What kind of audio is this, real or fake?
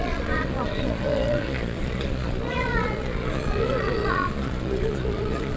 fake